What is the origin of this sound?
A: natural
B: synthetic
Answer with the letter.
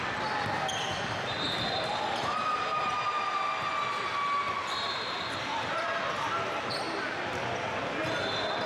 A